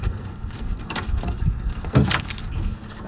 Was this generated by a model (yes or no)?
yes